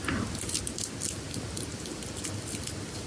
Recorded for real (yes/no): yes